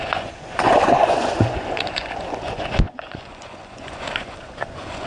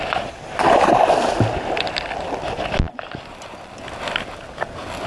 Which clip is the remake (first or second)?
first